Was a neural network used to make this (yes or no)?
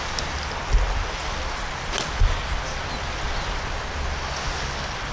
no